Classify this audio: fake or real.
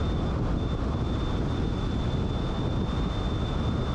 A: real